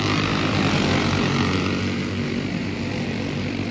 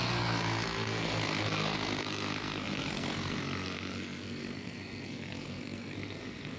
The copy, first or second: second